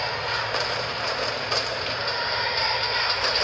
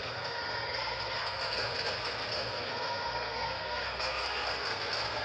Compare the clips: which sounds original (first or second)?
first